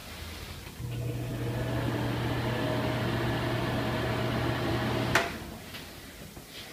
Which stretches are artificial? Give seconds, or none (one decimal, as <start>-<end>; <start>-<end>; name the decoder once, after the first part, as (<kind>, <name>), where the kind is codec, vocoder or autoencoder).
none